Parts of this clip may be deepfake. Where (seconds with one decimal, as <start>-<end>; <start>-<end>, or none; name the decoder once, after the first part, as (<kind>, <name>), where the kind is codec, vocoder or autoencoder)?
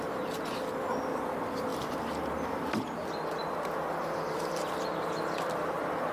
none